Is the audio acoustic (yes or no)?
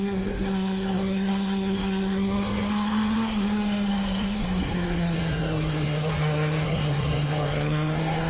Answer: no